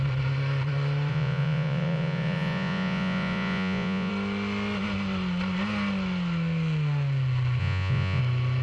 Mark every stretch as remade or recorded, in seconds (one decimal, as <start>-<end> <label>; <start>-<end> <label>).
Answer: 0.0-1.1 recorded; 1.1-4.1 remade; 4.1-7.6 recorded; 7.6-8.2 remade; 8.2-8.6 recorded